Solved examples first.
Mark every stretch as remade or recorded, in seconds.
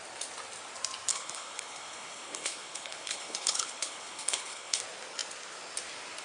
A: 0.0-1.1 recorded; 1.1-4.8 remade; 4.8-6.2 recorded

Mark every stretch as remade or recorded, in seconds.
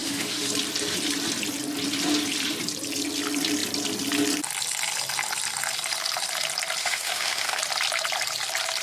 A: 0.0-0.5 remade; 0.5-6.8 recorded; 6.8-7.6 remade; 7.6-8.8 recorded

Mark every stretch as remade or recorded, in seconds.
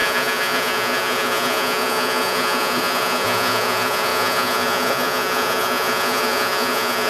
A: 0.0-7.1 remade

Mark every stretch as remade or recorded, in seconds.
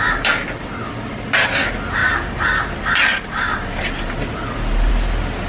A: 0.0-5.5 recorded